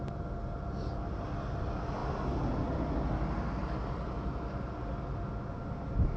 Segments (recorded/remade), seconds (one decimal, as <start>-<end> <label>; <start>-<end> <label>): 0.0-6.2 recorded